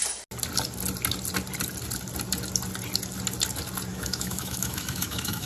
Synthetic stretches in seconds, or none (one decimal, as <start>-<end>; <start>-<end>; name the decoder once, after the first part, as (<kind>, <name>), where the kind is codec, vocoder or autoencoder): 3.9-5.5 (autoencoder, DAC-VAE)